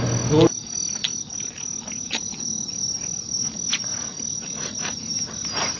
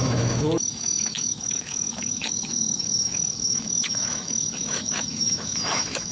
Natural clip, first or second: first